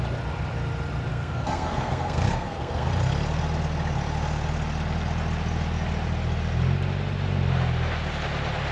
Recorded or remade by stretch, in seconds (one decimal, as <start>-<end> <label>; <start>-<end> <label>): 0.0-1.1 recorded; 1.1-2.9 remade; 2.9-8.7 recorded